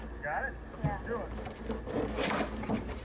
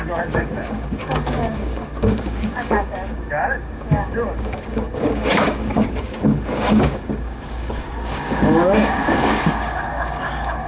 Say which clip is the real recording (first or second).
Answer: first